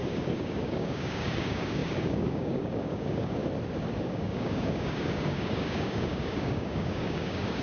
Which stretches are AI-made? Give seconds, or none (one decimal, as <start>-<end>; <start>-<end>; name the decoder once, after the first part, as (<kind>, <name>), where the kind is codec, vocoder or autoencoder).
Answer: 0.0-3.4 (codec, DAC); 4.0-7.6